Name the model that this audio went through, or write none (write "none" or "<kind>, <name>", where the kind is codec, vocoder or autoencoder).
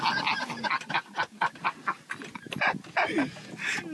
none